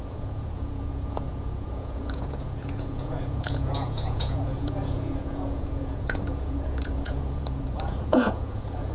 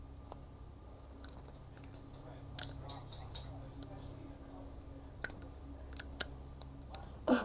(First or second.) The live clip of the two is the second